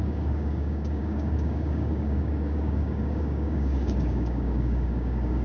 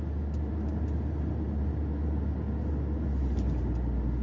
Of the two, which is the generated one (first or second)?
first